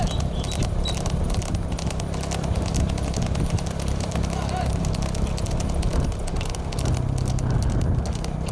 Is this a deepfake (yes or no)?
no